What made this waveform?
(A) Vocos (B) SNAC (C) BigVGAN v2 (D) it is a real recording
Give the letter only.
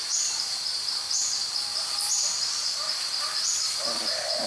C